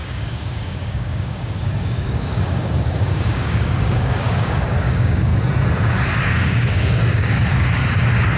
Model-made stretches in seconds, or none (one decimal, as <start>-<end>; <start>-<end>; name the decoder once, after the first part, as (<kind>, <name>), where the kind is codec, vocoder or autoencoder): 0.0-5.3 (codec, DAC); 6.2-7.8